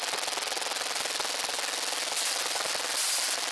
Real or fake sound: real